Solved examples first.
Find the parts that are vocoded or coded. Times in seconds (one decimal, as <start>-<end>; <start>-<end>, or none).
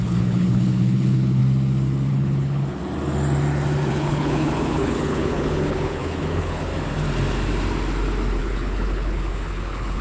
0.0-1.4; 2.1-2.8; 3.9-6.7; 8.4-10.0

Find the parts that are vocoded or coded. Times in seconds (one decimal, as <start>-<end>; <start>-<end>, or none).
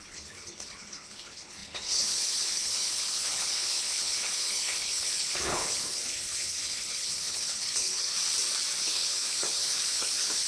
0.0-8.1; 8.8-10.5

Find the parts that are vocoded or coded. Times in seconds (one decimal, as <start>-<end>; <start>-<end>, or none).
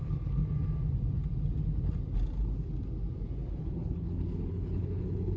0.0-0.4; 3.6-5.4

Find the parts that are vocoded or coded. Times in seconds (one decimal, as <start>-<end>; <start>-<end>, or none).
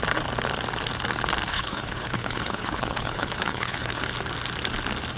1.5-4.0